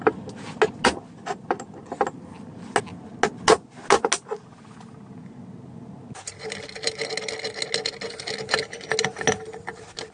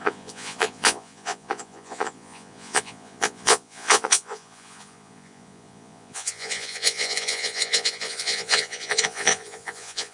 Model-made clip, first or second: second